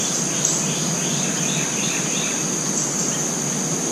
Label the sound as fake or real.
real